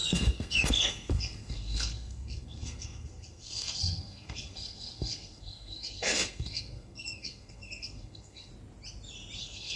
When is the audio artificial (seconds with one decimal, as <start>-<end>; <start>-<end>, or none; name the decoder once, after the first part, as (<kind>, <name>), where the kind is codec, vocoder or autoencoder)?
0.0-8.5 (codec, SNAC); 9.4-9.8

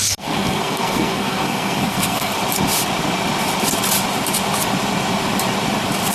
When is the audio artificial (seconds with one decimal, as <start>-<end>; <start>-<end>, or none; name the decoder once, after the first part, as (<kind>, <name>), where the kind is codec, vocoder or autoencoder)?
0.0-2.3 (codec, SNAC)